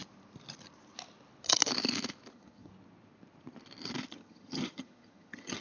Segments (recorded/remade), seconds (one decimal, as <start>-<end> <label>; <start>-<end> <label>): 0.0-2.3 recorded; 2.3-2.7 remade; 2.7-4.1 recorded; 4.1-5.6 remade